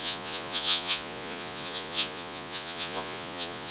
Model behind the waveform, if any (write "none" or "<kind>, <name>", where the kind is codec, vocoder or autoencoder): vocoder, Vocos